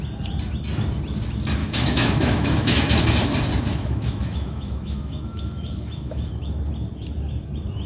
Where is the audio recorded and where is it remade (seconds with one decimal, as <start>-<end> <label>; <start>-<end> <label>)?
0.0-1.6 recorded; 1.6-3.0 remade; 3.0-3.7 recorded; 3.7-6.3 remade; 6.3-7.9 recorded